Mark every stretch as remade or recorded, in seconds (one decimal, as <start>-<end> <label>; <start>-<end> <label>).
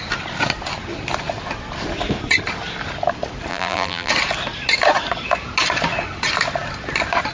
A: 0.0-3.5 recorded; 3.5-4.1 remade; 4.1-7.3 recorded